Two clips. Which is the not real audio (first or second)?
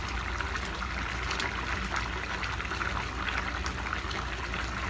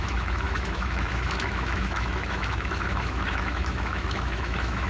second